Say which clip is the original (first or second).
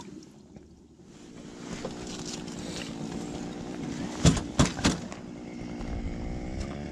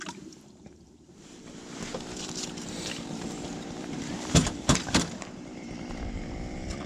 first